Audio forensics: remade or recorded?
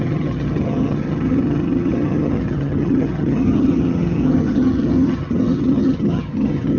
remade